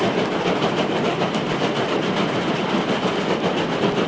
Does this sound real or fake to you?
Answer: real